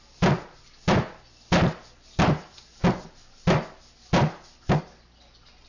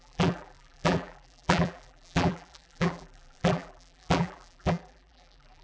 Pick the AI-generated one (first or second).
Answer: second